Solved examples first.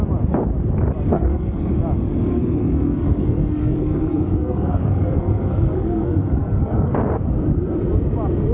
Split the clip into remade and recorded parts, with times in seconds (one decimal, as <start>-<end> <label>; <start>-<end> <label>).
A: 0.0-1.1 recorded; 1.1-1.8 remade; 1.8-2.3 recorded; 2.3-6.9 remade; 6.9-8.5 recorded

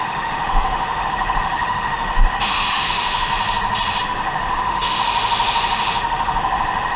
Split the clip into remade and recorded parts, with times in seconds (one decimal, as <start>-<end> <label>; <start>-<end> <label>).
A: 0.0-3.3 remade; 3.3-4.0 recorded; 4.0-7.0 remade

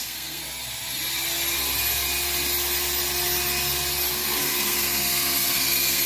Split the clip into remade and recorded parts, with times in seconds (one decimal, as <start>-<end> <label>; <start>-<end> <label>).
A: 0.0-0.4 remade; 0.4-4.1 recorded; 4.1-6.1 remade

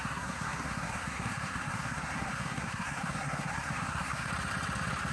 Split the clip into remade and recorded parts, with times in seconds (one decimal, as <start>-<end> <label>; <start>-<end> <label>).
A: 0.0-4.3 remade; 4.3-5.1 recorded

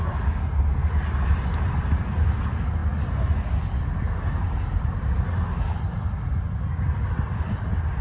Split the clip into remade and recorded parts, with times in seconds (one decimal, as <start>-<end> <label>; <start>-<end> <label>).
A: 0.0-8.0 recorded

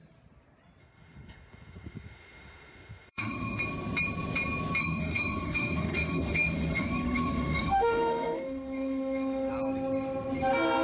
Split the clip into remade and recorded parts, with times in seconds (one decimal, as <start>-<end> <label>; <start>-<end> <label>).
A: 0.0-0.8 recorded; 0.8-3.6 remade; 3.6-4.8 recorded; 4.8-9.5 remade; 9.5-10.8 recorded